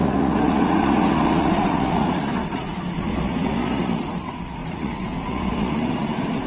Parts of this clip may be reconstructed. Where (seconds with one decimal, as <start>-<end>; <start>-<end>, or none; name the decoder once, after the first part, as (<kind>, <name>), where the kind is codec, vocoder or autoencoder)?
0.0-6.5 (vocoder, Vocos)